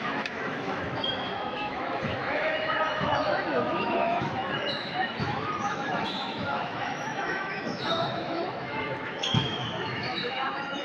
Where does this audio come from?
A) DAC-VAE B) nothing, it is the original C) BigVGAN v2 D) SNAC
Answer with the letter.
A